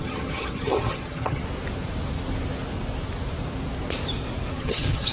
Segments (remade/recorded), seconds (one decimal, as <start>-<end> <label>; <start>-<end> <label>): 0.0-1.4 remade; 1.4-4.5 recorded; 4.5-5.1 remade

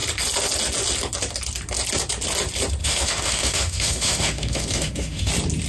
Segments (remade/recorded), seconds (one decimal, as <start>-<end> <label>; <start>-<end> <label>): 0.0-2.8 recorded; 2.8-5.3 remade; 5.3-5.7 recorded

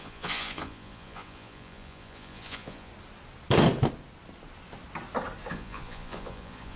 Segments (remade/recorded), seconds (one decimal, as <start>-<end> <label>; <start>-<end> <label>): 0.0-2.9 remade; 2.9-5.5 recorded; 5.5-6.8 remade

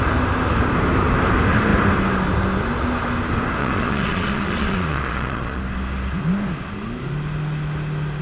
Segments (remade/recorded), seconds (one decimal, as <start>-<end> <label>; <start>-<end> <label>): 0.0-3.6 recorded; 3.6-5.6 remade; 5.6-8.2 recorded

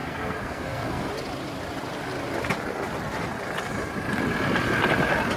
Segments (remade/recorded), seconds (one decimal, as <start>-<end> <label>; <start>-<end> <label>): 0.0-1.1 remade; 1.1-5.4 recorded

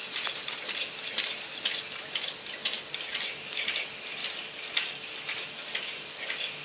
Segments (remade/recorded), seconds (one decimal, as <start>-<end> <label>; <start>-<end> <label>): 0.0-6.6 recorded

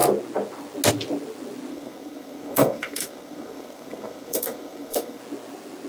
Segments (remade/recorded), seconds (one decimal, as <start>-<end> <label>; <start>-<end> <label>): 0.0-1.7 recorded; 1.7-5.2 remade; 5.2-5.9 recorded